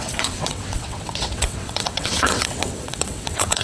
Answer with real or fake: fake